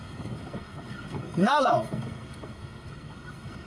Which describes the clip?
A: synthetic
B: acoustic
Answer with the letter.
A